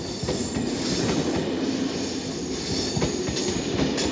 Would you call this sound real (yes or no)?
yes